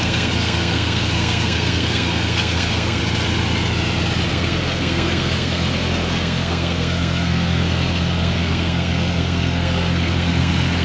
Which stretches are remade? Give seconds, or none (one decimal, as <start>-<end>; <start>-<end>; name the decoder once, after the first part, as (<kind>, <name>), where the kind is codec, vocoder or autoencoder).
0.0-3.0 (codec, SNAC); 4.3-10.8